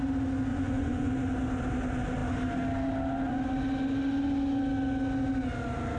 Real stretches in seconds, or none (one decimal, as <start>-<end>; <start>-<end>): 0.0-0.5; 1.1-6.0